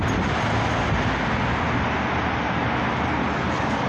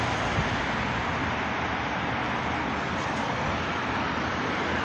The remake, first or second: second